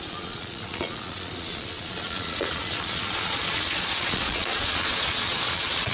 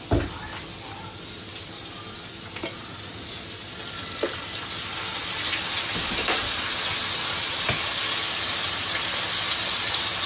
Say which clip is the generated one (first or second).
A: first